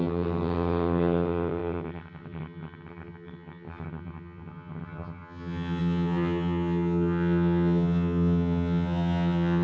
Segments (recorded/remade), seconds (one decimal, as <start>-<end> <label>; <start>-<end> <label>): 0.0-9.6 remade